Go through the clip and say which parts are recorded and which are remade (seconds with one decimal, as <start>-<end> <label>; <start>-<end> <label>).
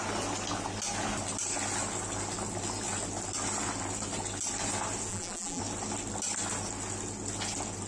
0.0-5.1 recorded; 5.1-5.6 remade; 5.6-7.9 recorded